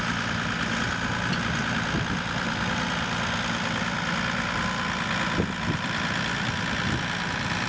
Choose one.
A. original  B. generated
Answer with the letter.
A